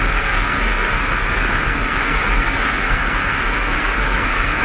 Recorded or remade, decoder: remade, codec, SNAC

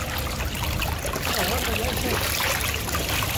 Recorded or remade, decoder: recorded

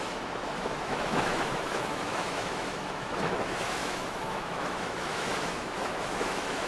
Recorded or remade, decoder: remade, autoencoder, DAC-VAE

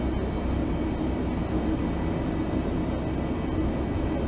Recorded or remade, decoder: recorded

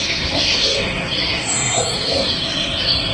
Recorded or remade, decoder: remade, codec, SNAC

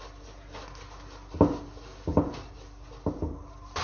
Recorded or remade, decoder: recorded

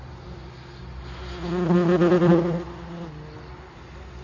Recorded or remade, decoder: recorded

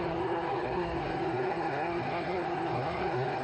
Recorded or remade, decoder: remade, codec, SNAC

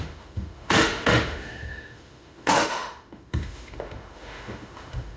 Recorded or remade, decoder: remade, autoencoder, DAC-VAE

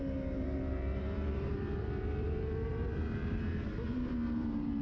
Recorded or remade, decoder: remade, vocoder, BigVGAN v2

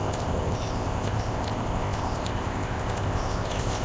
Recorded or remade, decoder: remade, codec, ZipCodec